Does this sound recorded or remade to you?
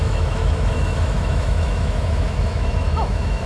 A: remade